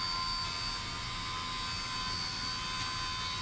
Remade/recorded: recorded